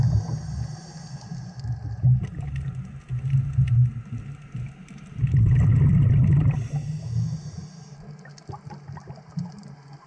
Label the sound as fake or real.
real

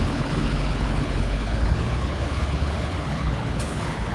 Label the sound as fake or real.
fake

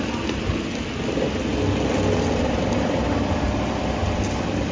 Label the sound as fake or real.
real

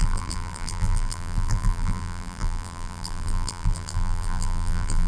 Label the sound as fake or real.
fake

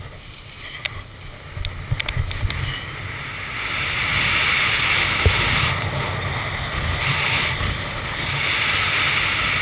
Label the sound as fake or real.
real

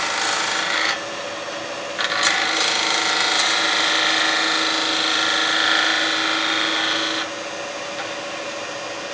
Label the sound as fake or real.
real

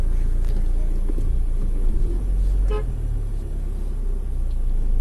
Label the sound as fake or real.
real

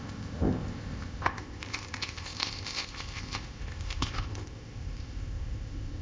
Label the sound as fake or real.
fake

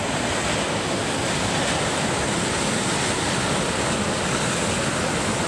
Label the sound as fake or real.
real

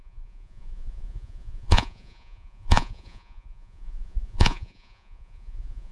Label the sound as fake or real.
fake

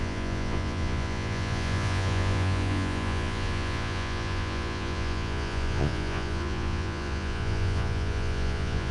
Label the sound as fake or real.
fake